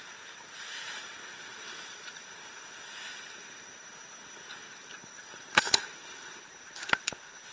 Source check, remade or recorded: remade